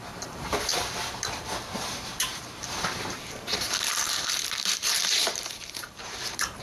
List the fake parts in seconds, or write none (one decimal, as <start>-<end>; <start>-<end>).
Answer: 0.0-0.7; 1.6-6.6